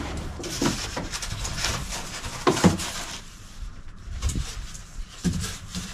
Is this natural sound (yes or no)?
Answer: no